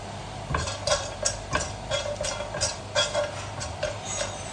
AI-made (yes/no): no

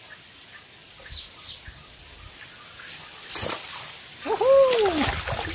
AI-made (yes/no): no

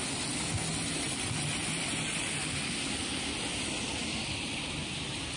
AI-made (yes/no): no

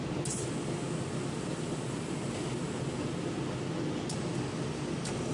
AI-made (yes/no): no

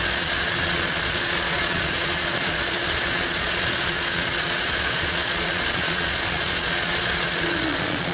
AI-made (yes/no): yes